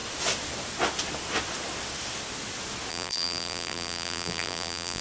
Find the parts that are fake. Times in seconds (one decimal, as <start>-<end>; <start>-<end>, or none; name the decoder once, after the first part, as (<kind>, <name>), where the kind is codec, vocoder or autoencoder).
2.9-5.0 (vocoder, BigVGAN v2)

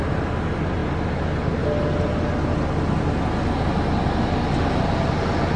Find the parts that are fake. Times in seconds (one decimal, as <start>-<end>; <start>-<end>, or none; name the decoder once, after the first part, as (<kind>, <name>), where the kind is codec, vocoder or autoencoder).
none

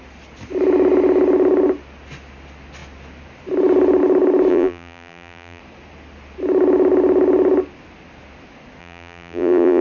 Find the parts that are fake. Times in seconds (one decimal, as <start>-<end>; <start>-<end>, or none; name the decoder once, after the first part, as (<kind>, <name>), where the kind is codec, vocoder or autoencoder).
4.5-5.6 (vocoder, BigVGAN v2); 8.8-9.8

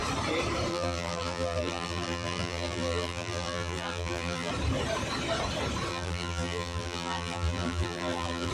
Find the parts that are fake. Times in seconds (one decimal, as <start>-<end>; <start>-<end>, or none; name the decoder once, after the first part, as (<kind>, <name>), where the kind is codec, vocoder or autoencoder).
0.7-4.5 (vocoder, BigVGAN v2); 5.9-8.5